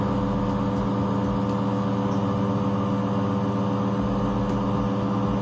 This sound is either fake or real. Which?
real